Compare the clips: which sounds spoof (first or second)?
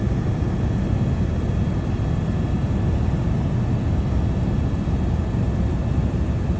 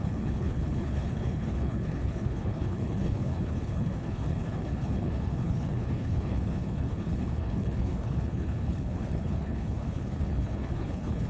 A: second